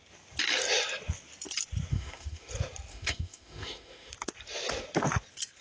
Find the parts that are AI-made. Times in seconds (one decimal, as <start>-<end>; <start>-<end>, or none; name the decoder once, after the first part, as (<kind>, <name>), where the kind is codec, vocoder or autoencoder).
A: 1.9-2.5 (autoencoder, DAC-VAE); 2.9-4.1